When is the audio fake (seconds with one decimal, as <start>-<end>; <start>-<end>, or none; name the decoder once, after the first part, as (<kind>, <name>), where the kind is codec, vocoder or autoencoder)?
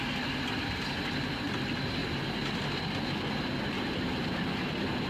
none